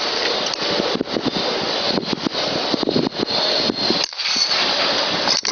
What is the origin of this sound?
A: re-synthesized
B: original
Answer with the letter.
B